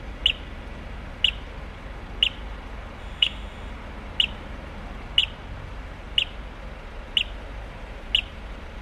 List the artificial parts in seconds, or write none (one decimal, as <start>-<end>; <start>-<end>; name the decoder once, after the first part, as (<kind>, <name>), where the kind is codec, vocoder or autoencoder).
3.0-3.7 (autoencoder, DAC-VAE)